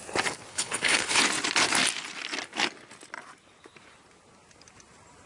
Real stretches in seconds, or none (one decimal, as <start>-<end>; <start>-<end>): 0.0-0.5; 1.2-5.3